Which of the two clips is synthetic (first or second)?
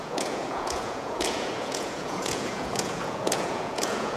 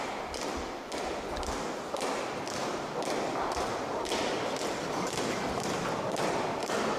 first